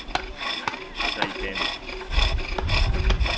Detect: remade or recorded recorded